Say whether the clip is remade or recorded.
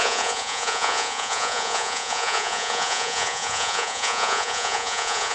remade